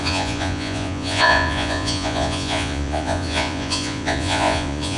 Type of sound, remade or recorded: remade